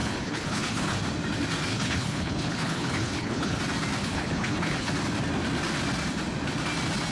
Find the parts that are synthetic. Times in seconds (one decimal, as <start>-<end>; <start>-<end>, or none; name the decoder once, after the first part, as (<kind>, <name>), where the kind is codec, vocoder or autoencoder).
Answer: 0.0-1.0 (codec, HILCodec); 1.7-3.6; 4.0-4.9